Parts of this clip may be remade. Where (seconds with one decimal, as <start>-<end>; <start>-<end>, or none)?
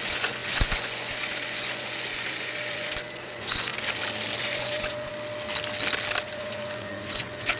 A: 0.0-3.7; 4.4-5.1; 6.2-7.6